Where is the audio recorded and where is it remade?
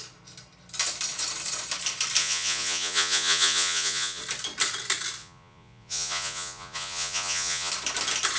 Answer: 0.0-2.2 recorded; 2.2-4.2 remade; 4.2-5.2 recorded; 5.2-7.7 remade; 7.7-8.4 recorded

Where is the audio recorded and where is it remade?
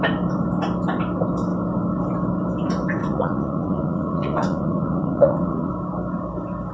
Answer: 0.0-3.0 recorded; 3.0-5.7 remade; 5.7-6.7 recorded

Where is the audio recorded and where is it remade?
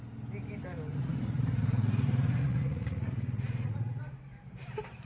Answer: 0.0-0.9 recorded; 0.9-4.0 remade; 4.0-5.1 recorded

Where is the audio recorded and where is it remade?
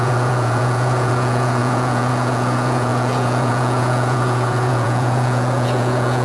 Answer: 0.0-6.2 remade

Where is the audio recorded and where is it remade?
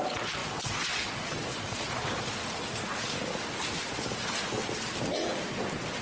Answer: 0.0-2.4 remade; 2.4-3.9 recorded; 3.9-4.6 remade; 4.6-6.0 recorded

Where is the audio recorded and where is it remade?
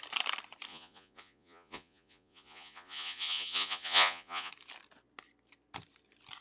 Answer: 0.0-0.7 recorded; 0.7-4.5 remade; 4.5-6.4 recorded